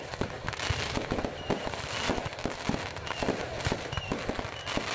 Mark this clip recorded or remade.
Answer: recorded